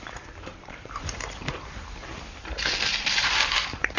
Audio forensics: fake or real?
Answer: fake